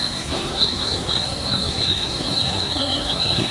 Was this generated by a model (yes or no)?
yes